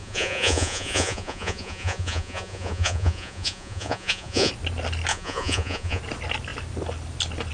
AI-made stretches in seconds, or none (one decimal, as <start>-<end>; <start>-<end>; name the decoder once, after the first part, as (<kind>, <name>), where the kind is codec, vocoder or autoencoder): 0.0-4.5 (vocoder, Vocos); 5.1-6.0